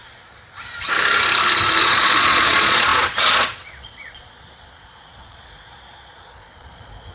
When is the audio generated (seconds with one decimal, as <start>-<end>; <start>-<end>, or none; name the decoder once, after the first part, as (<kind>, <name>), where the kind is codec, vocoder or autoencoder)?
1.8-7.1 (vocoder, Vocos)